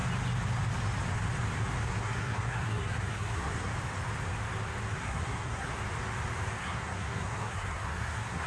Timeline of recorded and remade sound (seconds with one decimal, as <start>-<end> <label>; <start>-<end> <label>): 0.0-1.9 recorded; 1.9-3.7 remade; 3.7-5.0 recorded; 5.0-5.7 remade; 5.7-6.6 recorded; 6.6-8.5 remade